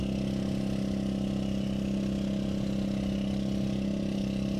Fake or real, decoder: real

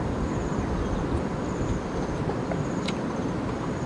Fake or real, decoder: real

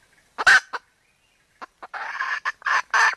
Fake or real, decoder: real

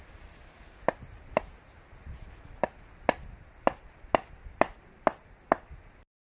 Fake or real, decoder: real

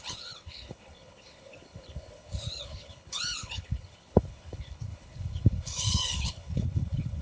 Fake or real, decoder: fake, codec, HILCodec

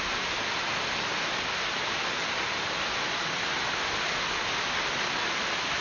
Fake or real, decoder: real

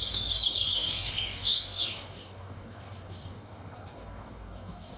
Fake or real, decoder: fake, codec, DAC